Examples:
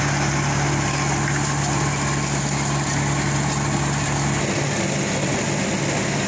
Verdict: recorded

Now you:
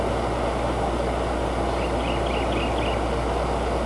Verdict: recorded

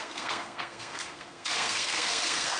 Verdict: remade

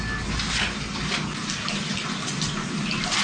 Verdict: recorded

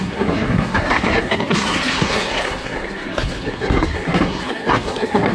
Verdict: remade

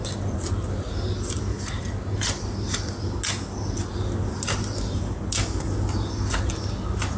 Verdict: recorded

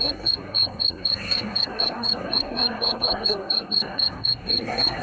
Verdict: remade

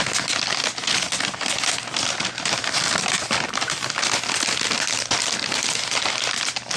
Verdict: recorded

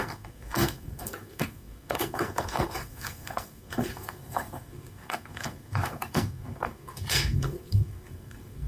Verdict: remade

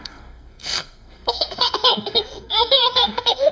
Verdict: remade